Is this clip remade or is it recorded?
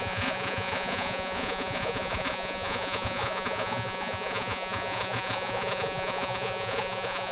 remade